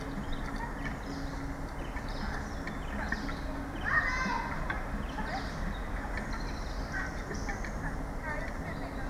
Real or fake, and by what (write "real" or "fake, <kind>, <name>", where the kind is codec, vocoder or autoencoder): real